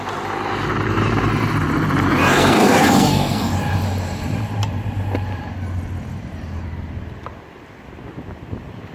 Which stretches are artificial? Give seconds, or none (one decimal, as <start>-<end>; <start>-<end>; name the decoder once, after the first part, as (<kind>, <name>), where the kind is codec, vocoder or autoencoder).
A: 2.2-3.5 (codec, SNAC)